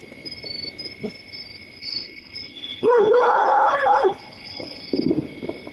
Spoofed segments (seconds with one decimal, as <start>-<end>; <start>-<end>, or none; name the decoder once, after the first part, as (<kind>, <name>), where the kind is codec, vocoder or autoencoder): 1.8-4.8 (codec, HILCodec)